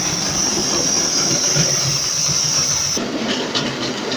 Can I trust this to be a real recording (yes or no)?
no